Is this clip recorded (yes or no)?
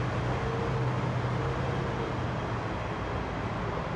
yes